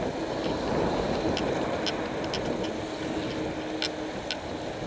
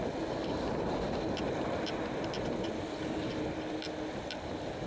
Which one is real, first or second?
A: first